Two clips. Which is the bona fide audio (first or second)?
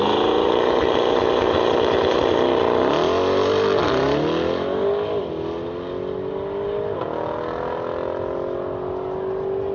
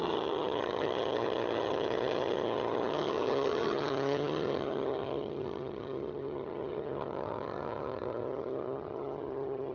first